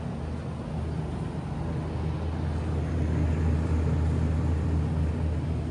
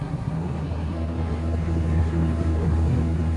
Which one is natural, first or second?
first